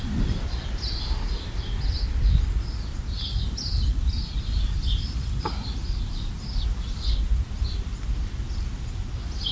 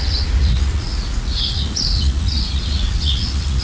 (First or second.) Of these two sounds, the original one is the first